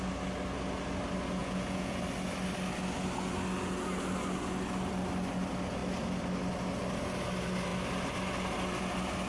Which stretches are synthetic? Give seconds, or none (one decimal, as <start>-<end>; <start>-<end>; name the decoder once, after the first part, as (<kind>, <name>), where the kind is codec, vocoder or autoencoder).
1.4-2.0 (vocoder, Vocos)